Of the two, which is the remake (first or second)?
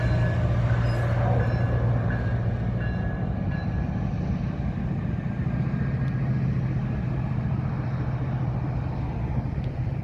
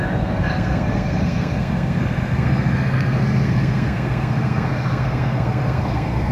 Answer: second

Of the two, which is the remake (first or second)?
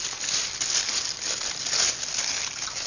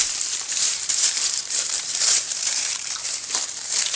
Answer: second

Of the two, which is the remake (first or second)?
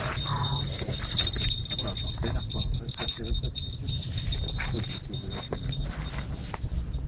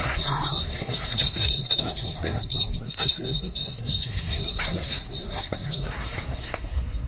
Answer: second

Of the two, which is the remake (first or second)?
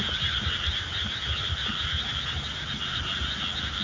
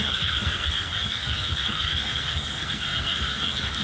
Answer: second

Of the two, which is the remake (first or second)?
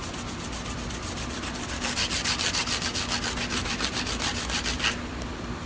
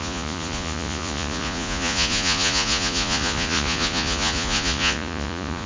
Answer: second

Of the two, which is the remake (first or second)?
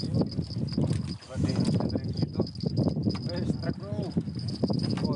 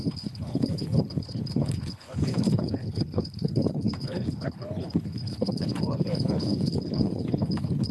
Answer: second